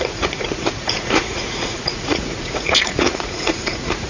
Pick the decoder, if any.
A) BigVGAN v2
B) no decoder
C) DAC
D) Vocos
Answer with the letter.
D